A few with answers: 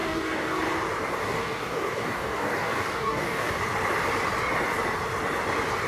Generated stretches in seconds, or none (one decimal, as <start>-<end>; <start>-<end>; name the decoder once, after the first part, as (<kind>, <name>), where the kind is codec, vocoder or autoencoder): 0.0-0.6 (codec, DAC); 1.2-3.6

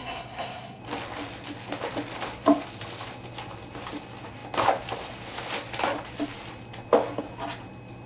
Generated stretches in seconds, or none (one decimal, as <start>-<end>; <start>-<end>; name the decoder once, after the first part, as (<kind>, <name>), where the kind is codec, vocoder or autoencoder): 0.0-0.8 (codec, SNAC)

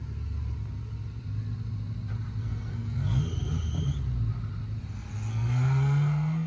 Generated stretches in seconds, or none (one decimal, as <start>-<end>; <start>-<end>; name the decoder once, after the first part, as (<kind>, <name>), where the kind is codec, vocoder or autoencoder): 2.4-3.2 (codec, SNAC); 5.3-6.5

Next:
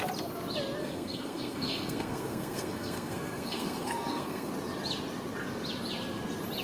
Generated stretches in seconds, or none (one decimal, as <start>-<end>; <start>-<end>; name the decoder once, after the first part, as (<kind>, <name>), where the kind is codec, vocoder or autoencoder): 0.8-4.5 (codec, SNAC)